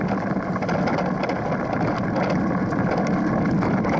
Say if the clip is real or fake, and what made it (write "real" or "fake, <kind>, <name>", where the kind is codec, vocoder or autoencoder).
real